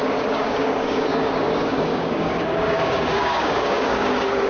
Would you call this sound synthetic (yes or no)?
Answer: yes